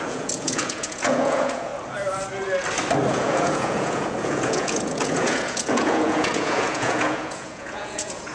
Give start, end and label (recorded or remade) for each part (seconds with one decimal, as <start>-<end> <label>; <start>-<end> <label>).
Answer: 0.0-1.7 remade; 1.7-3.1 recorded; 3.1-8.3 remade

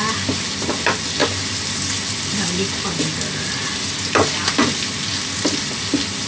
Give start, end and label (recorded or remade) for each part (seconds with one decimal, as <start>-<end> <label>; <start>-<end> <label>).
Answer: 0.0-6.3 recorded

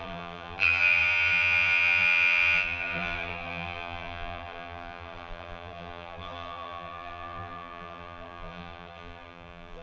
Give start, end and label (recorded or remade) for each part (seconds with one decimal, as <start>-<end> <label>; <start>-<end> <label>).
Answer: 0.0-9.8 remade

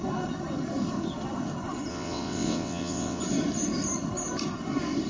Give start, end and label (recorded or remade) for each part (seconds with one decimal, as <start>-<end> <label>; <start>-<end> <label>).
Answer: 0.0-1.9 recorded; 1.9-3.2 remade; 3.2-5.1 recorded

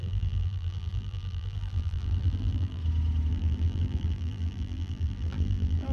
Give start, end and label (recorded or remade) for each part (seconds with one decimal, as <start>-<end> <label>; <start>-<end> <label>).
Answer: 0.0-2.8 remade; 2.8-3.3 recorded; 3.3-5.9 remade